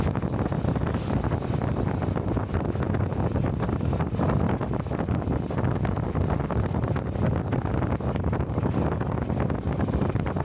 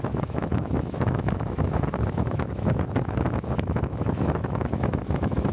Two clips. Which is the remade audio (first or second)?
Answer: second